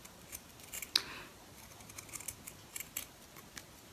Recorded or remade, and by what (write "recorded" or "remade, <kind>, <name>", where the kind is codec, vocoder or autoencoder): recorded